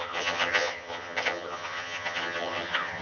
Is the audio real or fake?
fake